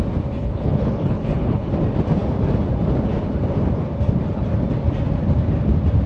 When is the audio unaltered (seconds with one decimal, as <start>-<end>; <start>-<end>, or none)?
0.0-0.4; 1.7-6.1

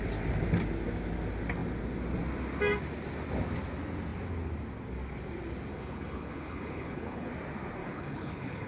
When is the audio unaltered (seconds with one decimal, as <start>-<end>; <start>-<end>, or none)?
0.0-5.7; 7.3-7.8

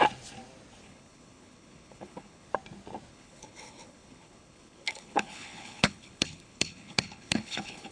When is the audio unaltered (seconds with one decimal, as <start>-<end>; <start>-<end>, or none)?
0.0-0.8; 2.5-3.1

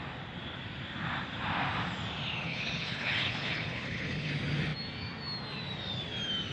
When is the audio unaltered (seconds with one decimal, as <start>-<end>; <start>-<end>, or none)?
0.0-2.4; 4.3-6.5

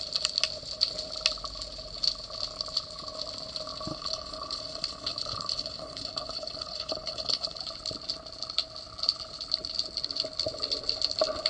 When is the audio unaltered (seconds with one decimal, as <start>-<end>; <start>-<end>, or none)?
0.0-3.9; 7.6-11.5

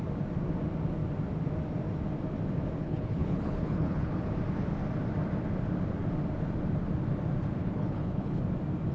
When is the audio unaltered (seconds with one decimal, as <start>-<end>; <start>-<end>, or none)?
0.0-2.8; 4.3-7.6; 8.4-8.9

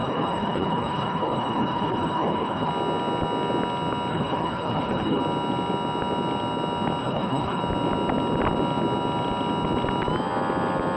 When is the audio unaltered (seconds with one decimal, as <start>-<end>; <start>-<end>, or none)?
2.7-4.1; 5.2-7.0; 7.6-11.0